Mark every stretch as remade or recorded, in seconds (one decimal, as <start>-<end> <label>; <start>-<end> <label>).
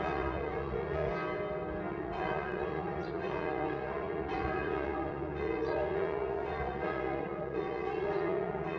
0.0-1.1 remade; 1.1-1.9 recorded; 1.9-8.8 remade